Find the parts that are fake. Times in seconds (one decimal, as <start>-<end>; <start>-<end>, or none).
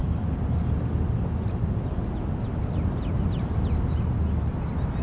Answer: none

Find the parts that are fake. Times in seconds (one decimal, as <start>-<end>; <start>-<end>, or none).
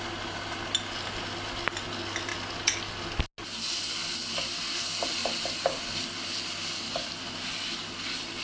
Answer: none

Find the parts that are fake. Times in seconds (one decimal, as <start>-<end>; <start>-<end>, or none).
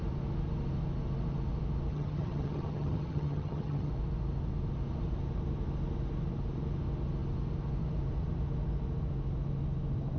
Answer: 1.9-3.9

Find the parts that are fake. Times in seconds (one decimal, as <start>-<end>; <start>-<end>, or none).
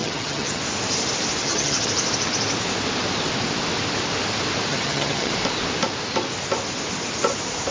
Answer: 0.0-0.6; 1.4-1.9; 4.7-5.3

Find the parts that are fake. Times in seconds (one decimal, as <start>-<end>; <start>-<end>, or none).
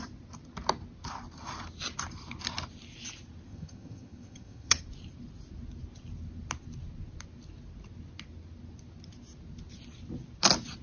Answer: 3.5-4.8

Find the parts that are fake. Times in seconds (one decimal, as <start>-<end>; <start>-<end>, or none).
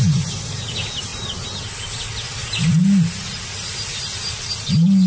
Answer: none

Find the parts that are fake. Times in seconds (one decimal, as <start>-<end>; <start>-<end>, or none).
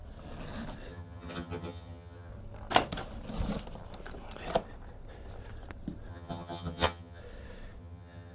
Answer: 0.9-2.3; 6.1-7.2; 7.8-8.3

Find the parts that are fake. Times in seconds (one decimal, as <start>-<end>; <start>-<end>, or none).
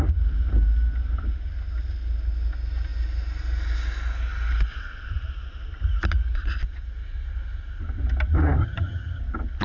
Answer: 8.6-9.2